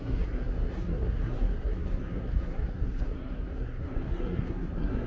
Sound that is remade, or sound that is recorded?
remade